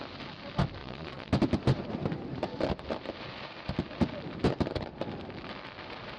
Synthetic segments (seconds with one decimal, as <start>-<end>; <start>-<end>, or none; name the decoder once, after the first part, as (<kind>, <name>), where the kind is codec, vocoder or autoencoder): 0.8-1.3 (vocoder, Vocos)